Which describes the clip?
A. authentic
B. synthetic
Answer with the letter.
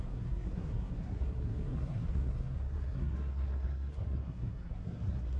B